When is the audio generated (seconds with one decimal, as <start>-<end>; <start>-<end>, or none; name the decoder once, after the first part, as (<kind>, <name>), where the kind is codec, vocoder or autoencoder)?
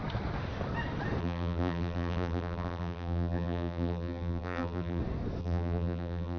1.2-5.0 (vocoder, BigVGAN v2); 5.4-6.4